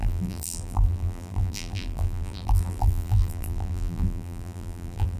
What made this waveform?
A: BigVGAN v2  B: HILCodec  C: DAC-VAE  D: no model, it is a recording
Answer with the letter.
A